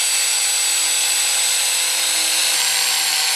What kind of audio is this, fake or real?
real